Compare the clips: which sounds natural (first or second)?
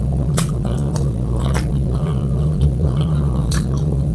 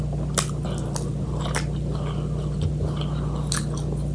second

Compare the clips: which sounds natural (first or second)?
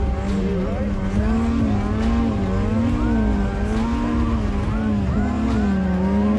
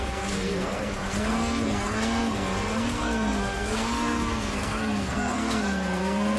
first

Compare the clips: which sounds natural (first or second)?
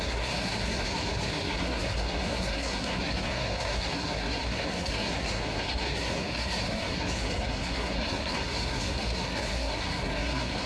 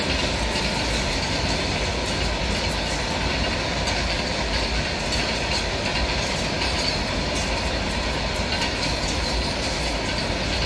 second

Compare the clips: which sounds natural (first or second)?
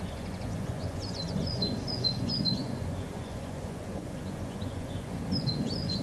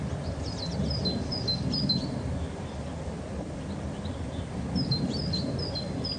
second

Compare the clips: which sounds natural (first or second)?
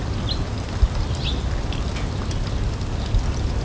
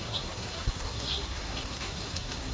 first